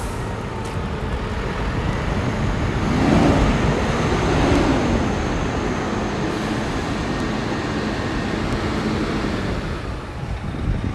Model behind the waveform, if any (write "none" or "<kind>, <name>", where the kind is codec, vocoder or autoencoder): none